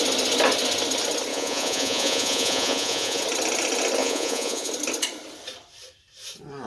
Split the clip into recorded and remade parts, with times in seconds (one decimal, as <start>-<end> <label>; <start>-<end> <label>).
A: 0.0-1.3 recorded; 1.3-3.2 remade; 3.2-4.0 recorded; 4.0-4.7 remade; 4.7-6.7 recorded